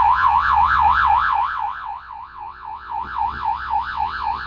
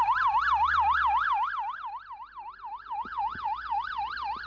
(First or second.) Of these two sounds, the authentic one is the second